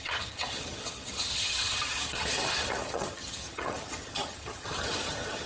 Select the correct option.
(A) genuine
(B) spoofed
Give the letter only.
B